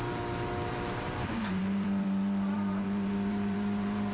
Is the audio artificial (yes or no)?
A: yes